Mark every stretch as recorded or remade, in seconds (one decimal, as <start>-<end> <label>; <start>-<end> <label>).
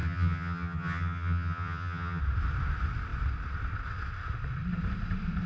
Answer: 0.0-2.2 remade; 2.2-5.5 recorded